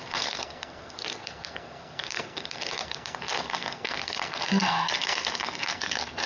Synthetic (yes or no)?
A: yes